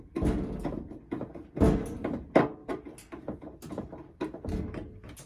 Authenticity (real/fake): real